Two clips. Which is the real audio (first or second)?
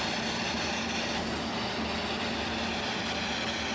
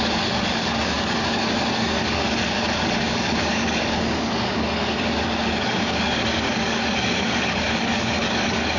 first